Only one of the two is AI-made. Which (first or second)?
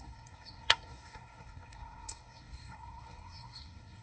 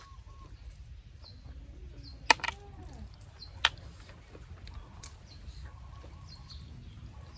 first